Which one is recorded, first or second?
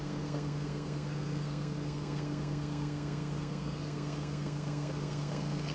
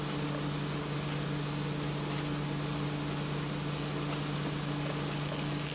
second